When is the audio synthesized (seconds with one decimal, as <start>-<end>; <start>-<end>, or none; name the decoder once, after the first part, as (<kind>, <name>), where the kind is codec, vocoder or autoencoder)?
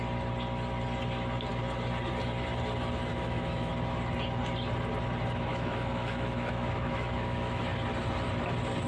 3.1-3.7 (autoencoder, DAC-VAE); 5.5-7.6